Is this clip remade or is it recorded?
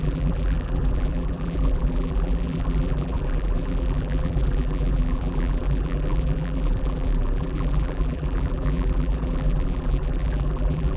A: remade